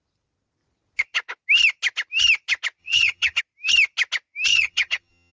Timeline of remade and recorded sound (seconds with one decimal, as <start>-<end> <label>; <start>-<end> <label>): 0.0-2.8 recorded; 2.8-3.4 remade; 3.4-4.5 recorded; 4.5-5.3 remade